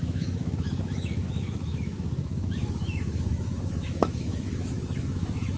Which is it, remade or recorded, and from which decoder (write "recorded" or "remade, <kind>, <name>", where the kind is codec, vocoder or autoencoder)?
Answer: remade, autoencoder, DAC-VAE